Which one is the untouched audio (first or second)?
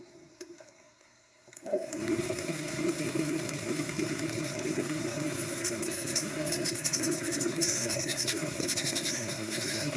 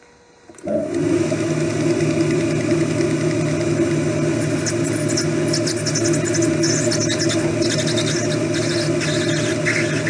second